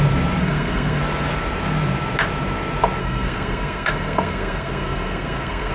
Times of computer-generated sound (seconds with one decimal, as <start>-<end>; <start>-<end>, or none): 0.4-1.0; 3.0-5.7